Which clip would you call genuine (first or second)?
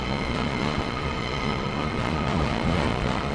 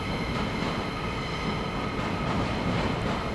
second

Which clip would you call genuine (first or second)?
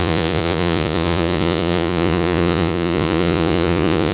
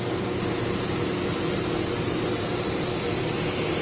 second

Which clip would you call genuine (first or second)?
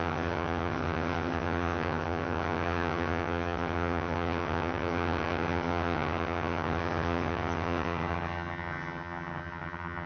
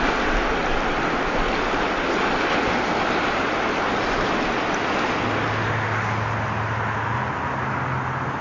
second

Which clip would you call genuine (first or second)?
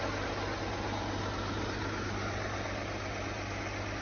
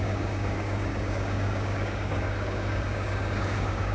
first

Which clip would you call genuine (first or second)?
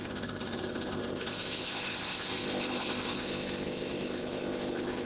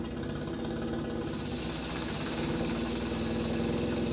second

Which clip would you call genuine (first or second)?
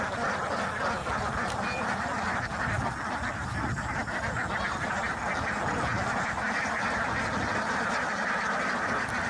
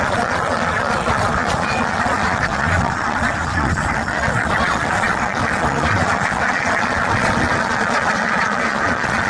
first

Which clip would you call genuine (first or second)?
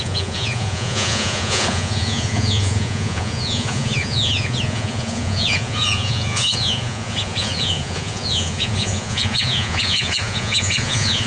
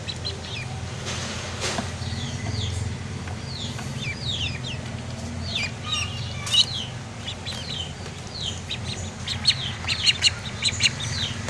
second